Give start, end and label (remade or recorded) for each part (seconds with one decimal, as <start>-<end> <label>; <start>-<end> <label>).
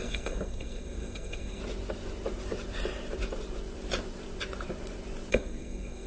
0.0-1.6 remade; 1.6-5.3 recorded; 5.3-6.1 remade